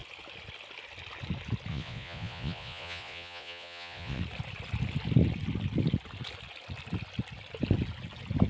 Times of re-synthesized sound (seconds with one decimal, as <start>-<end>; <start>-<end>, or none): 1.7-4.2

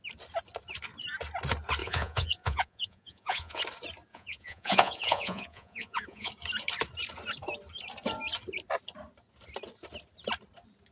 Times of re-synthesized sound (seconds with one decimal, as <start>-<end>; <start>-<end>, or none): 1.8-3.6; 4.1-6.3

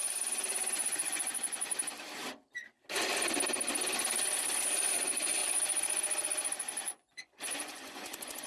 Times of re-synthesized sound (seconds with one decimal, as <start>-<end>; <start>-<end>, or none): 0.0-1.7; 4.9-5.4; 6.9-8.5

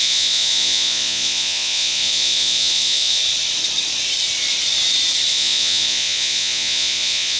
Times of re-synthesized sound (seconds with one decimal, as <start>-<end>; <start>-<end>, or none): 0.0-3.2; 5.3-7.4

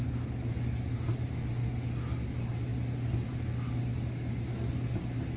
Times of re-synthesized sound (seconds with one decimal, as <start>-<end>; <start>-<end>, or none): none

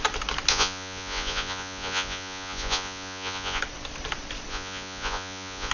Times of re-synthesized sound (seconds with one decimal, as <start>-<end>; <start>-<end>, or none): 0.5-3.6; 4.5-5.7

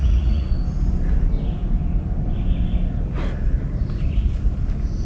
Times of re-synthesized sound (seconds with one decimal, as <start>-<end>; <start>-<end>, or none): 0.0-0.5